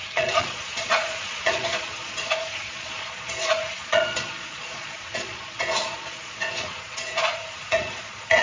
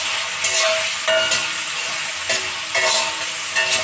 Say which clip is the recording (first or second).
second